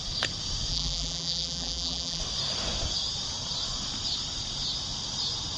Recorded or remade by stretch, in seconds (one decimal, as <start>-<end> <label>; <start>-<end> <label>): 0.0-0.7 recorded; 0.7-2.2 remade; 2.2-5.6 recorded